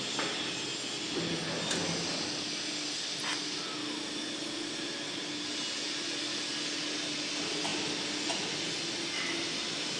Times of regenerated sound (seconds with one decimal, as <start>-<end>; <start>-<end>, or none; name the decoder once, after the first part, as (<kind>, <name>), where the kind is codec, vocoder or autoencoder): none